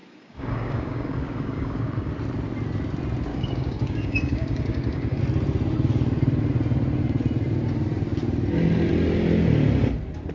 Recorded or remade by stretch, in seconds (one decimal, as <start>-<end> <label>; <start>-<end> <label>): 0.0-2.1 remade; 2.1-3.3 recorded; 3.3-5.2 remade; 5.2-10.3 recorded